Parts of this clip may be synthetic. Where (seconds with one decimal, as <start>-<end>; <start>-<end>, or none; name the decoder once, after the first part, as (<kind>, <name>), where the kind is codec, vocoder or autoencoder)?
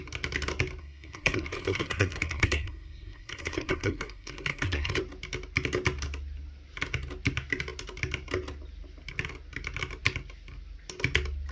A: 0.8-5.0 (codec, SNAC)